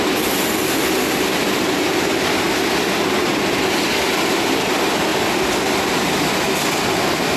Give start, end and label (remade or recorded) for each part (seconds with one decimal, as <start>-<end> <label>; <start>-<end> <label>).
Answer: 0.0-7.4 recorded